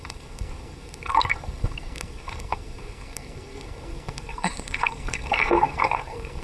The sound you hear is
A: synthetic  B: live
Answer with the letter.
A